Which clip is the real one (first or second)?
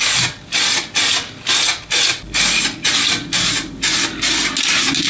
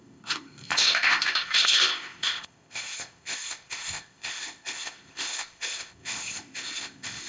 first